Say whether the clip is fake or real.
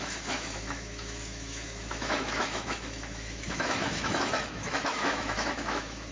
fake